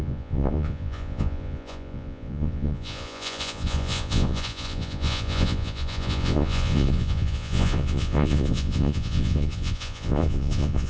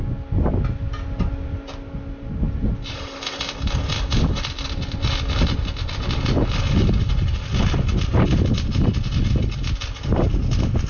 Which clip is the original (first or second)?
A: second